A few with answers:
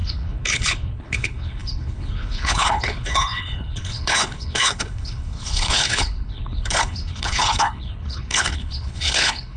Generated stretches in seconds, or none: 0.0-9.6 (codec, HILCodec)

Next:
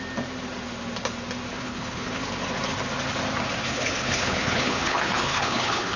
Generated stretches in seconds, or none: 1.5-2.2 (codec, HILCodec); 3.6-6.0

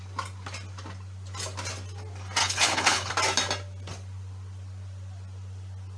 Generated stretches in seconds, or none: 2.4-3.1 (codec, HILCodec)